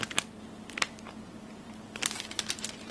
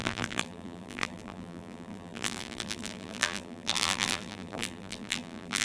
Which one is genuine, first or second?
first